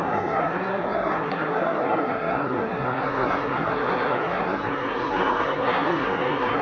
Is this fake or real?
fake